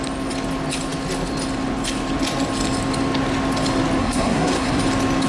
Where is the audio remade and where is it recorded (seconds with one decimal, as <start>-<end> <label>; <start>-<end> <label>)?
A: 0.0-4.0 recorded; 4.0-4.8 remade; 4.8-5.3 recorded